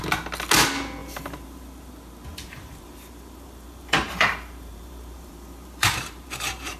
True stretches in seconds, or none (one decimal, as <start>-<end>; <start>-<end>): 0.0-1.0; 1.9-2.3